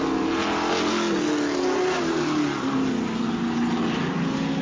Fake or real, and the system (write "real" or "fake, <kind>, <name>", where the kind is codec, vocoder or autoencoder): real